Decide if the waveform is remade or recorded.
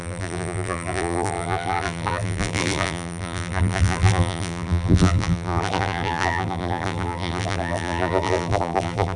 remade